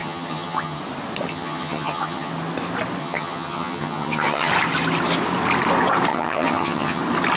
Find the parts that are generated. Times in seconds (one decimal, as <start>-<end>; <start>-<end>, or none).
0.0-0.8; 1.3-2.3; 3.0-4.5; 6.1-7.0